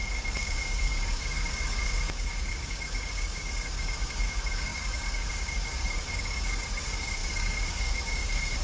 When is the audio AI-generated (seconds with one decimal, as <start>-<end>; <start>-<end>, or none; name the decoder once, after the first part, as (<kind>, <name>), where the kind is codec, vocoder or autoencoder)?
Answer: 0.0-8.6 (codec, DAC)